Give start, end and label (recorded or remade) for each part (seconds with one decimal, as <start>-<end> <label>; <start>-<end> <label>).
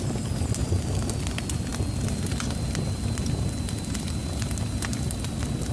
0.0-5.7 recorded